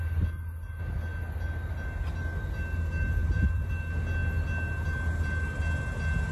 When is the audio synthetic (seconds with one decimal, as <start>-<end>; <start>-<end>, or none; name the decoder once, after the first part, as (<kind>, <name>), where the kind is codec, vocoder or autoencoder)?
3.2-3.7 (vocoder, BigVGAN v2)